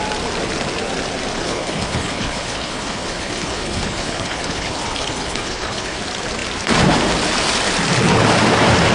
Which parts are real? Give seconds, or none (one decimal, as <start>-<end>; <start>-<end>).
0.0-1.3; 6.0-8.9